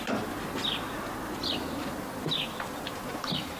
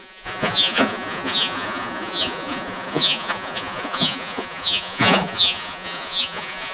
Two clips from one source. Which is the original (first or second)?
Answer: first